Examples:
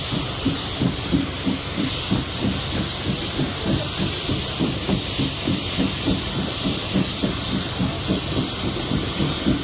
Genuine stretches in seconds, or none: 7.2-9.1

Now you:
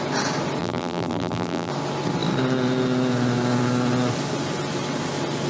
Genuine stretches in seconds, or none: 0.0-0.6; 1.7-5.5

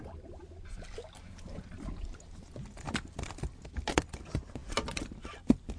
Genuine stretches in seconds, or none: 0.0-5.8

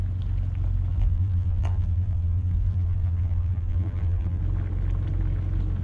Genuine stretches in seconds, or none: 0.0-0.9; 4.4-5.8